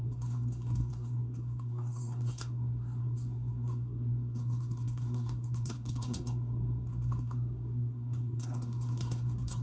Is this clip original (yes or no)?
no